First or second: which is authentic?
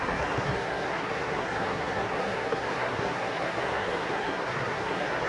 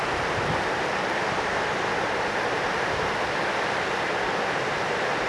second